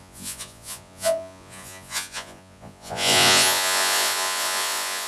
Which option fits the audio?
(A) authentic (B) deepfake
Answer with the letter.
B